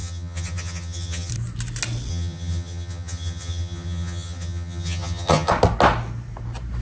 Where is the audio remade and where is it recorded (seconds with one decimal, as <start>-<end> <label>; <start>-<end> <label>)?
0.0-1.3 remade; 1.3-2.1 recorded; 2.1-5.5 remade; 5.5-6.8 recorded